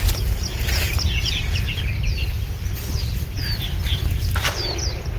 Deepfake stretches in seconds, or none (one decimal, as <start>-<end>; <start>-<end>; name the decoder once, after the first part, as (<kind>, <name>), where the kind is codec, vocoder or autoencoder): 0.5-1.8 (vocoder, Vocos)